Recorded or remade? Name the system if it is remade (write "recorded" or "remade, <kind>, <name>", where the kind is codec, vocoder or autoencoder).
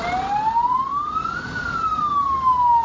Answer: recorded